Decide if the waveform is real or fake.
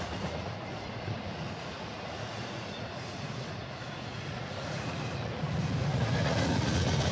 fake